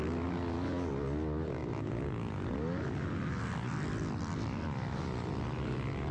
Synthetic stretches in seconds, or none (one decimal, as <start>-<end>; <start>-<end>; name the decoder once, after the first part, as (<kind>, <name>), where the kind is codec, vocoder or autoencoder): none